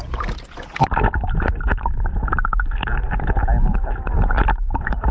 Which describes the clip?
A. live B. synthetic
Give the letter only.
A